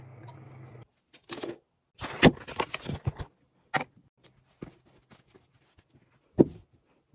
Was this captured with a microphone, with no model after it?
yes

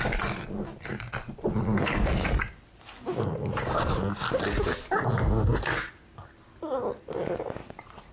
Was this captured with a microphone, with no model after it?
yes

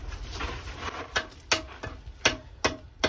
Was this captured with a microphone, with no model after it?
yes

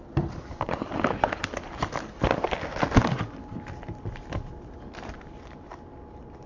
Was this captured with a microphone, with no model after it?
yes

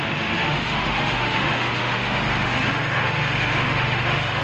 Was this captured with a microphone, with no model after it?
no